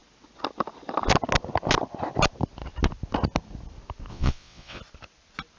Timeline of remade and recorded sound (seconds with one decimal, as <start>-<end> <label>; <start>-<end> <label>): 0.0-4.1 recorded; 4.1-4.8 remade; 4.8-5.6 recorded